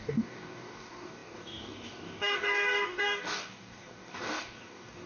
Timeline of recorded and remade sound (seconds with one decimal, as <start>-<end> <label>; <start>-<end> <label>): 0.0-5.1 remade